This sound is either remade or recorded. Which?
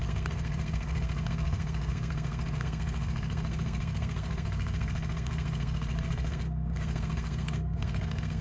remade